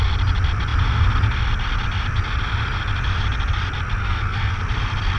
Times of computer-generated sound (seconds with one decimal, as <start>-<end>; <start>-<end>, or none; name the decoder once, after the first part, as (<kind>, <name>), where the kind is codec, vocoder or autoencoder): 4.0-4.6 (codec, SNAC)